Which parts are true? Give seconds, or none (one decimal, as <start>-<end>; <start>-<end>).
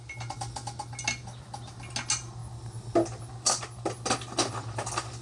0.0-5.2